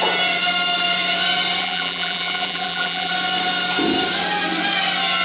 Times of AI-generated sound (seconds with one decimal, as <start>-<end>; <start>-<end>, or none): 1.6-3.1